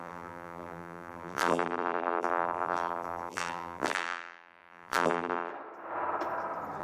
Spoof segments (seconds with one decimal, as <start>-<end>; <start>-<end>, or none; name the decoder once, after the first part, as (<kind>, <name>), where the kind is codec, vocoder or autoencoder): 0.0-5.5 (vocoder, BigVGAN v2)